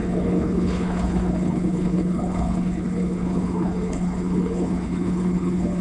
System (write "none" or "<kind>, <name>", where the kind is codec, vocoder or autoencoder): codec, HILCodec